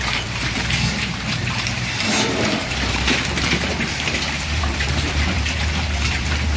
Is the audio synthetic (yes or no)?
yes